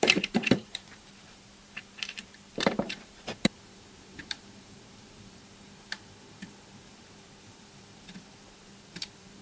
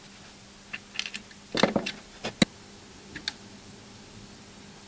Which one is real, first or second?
second